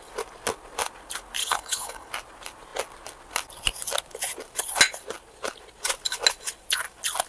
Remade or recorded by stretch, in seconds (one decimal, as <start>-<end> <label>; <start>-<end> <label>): 0.0-1.4 recorded; 1.4-2.1 remade; 2.1-7.3 recorded